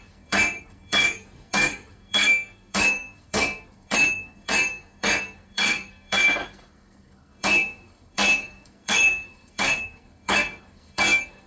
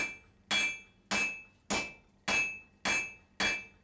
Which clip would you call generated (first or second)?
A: first